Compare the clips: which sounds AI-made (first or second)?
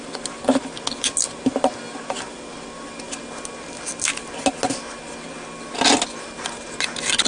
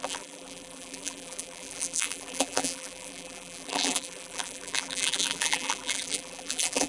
second